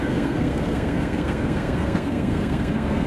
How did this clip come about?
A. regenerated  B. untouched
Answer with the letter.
A